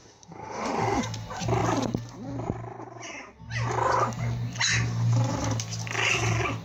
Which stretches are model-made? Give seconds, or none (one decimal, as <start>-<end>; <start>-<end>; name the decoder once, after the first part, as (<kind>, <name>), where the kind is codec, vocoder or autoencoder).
0.0-1.0 (autoencoder, DAC-VAE)